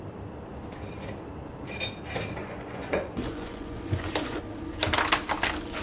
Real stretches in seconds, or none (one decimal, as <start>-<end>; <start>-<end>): 0.0-2.4; 4.4-5.8